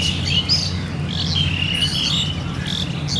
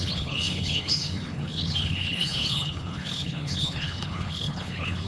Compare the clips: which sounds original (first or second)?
first